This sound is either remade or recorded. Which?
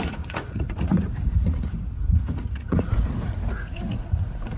remade